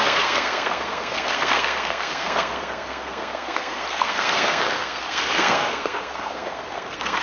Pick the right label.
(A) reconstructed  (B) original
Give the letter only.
A